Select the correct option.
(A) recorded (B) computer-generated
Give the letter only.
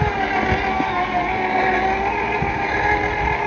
A